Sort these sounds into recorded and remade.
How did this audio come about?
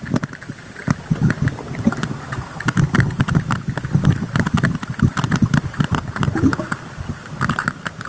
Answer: recorded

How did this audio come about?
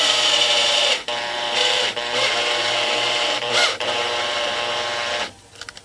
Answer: remade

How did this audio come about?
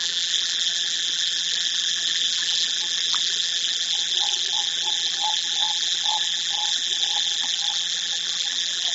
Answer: remade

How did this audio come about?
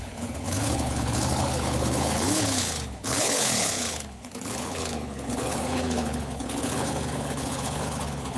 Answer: remade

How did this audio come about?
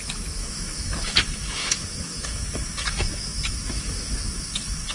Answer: remade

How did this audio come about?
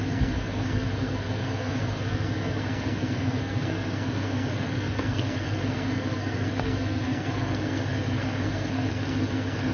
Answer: remade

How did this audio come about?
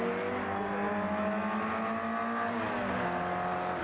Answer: recorded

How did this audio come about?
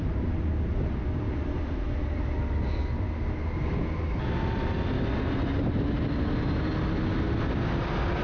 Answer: recorded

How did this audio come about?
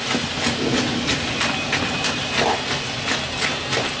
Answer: recorded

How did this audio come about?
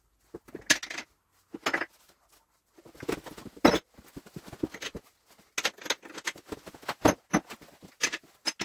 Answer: recorded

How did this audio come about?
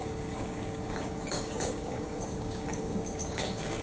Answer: remade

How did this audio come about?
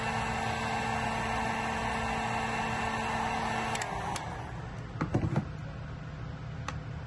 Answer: recorded